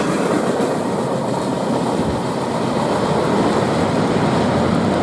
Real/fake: real